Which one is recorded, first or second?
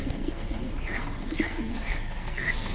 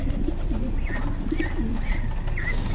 second